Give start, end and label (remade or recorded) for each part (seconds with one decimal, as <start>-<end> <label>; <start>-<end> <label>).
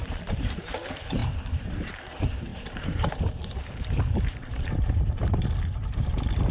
0.0-6.5 remade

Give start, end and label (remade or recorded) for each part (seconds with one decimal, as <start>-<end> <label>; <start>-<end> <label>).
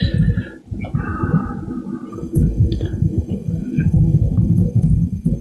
0.0-2.1 recorded; 2.1-5.4 remade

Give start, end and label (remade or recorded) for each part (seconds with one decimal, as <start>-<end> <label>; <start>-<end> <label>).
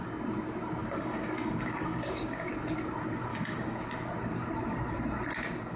0.0-0.8 recorded; 0.8-2.5 remade; 2.5-3.3 recorded; 3.3-3.8 remade; 3.8-5.8 recorded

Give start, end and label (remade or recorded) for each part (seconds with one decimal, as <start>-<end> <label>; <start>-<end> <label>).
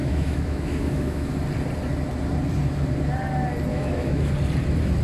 0.0-1.3 remade; 1.3-3.7 recorded; 3.7-4.3 remade; 4.3-5.0 recorded